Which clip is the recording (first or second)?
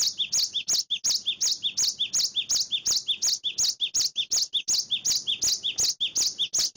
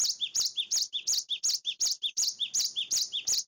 first